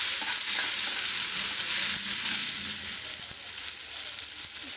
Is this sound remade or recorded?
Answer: remade